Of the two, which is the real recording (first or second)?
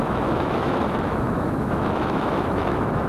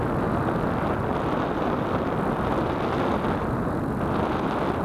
second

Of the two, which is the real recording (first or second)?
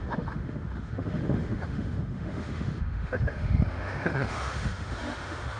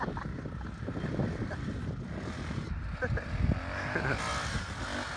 second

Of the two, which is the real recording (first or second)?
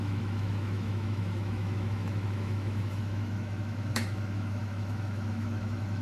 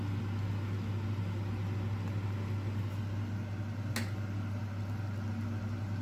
second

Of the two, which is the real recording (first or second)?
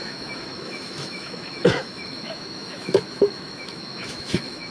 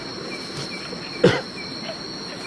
second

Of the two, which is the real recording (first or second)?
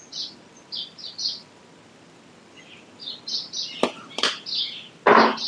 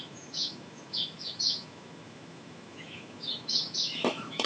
first